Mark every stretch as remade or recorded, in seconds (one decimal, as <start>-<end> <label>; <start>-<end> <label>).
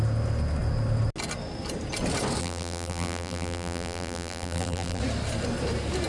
0.0-2.4 recorded; 2.4-5.0 remade; 5.0-6.1 recorded